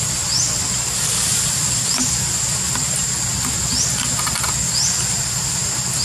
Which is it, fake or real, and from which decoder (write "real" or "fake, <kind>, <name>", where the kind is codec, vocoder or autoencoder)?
real